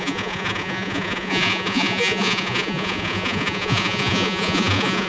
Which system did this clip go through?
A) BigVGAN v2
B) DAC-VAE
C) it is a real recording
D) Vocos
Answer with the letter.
D